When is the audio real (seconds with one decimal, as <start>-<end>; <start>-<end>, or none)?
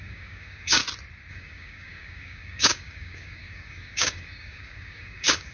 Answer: 0.8-1.3